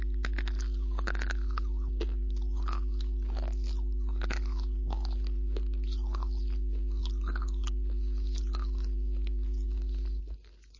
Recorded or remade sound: recorded